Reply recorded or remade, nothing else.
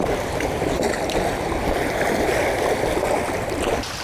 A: recorded